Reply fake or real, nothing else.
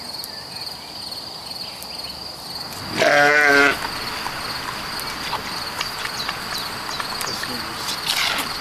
real